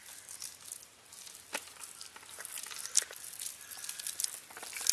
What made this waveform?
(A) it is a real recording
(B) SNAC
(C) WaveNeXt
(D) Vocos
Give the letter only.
A